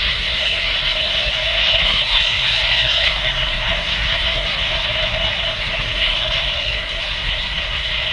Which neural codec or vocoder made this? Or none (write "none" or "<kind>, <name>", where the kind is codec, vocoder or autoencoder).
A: codec, SNAC